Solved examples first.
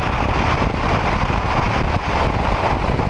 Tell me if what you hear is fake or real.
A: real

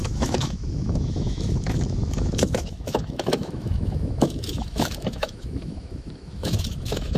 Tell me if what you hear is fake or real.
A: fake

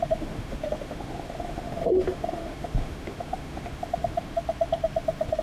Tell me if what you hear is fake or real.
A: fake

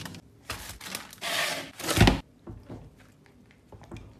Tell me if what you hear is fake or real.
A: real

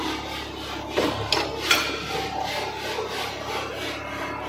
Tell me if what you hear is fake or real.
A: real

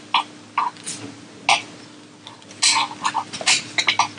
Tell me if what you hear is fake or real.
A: real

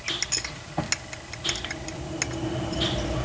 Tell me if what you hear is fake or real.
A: real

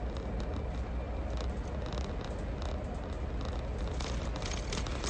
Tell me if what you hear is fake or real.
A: real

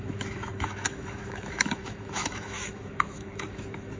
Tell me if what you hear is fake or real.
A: fake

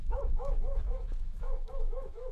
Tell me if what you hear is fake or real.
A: fake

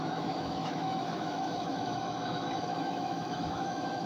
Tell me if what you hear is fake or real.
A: fake